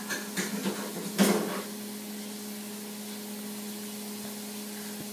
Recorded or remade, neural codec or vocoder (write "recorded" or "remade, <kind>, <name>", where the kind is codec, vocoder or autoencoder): recorded